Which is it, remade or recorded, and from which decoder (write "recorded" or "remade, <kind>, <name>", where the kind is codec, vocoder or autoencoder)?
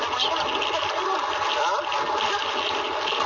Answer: recorded